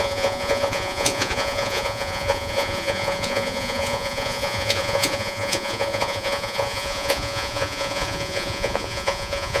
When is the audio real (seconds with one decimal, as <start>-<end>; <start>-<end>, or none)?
none